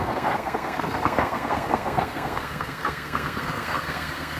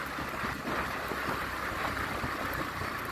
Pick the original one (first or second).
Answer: second